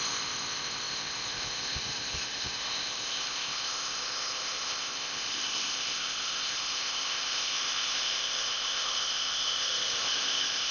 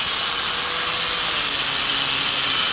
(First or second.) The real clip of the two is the second